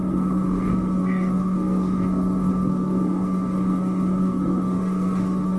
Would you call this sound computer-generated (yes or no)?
yes